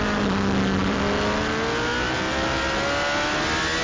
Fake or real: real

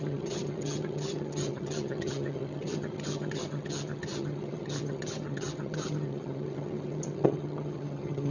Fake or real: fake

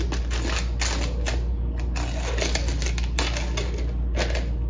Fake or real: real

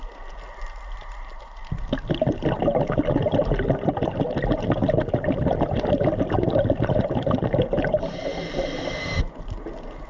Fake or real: real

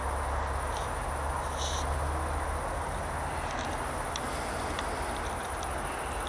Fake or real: real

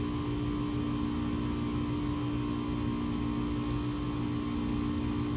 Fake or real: real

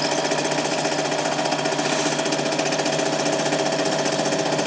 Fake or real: real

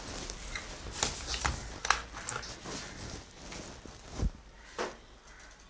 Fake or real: real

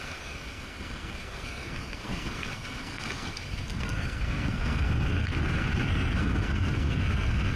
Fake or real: fake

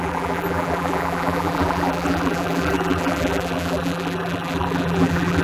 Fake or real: fake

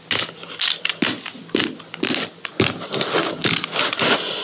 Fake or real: real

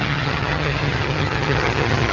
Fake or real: fake